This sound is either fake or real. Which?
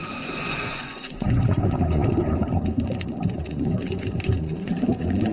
fake